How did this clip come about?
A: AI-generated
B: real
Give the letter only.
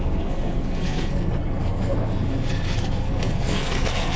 A